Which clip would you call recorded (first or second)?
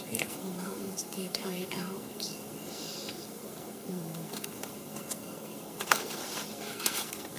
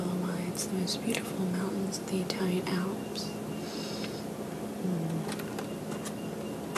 second